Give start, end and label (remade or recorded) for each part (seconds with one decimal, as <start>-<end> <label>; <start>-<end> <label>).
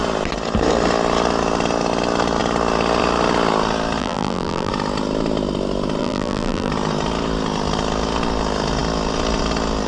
0.0-4.0 recorded; 4.0-4.7 remade; 4.7-6.0 recorded; 6.0-6.7 remade; 6.7-9.9 recorded